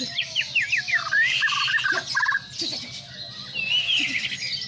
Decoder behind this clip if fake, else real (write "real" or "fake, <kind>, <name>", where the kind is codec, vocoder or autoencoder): real